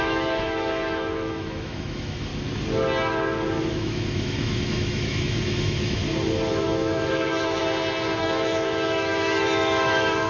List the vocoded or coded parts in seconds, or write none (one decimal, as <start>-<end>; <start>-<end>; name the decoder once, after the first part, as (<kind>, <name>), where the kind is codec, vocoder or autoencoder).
0.0-2.3 (autoencoder, DAC-VAE); 3.7-6.0; 6.5-7.6; 8.2-10.3